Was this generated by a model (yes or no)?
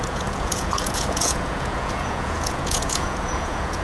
yes